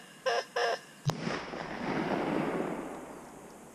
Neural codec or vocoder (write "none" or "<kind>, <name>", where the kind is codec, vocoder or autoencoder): none